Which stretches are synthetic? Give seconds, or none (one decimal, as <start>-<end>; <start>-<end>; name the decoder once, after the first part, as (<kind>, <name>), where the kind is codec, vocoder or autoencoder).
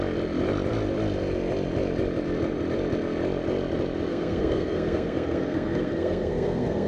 4.1-6.9 (codec, SNAC)